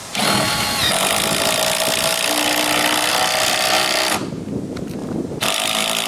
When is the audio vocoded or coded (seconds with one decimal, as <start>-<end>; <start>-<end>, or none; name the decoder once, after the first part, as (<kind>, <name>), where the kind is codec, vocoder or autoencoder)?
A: none